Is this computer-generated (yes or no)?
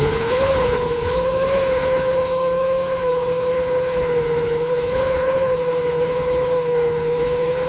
yes